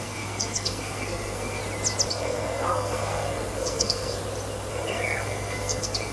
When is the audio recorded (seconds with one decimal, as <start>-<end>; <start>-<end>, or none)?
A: 1.6-2.1; 4.2-4.7